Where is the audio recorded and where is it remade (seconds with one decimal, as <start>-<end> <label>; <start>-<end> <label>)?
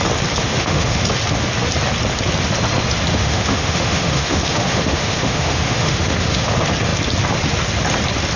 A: 0.0-0.4 recorded; 0.4-1.0 remade; 1.0-3.1 recorded; 3.1-6.5 remade; 6.5-8.4 recorded